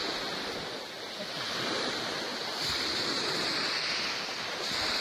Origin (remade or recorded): recorded